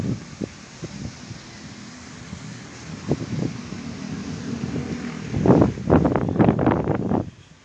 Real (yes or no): yes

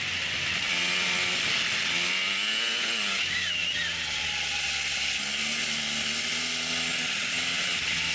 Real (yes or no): yes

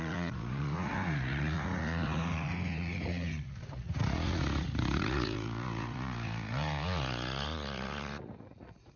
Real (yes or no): no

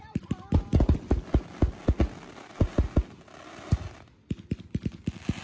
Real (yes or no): yes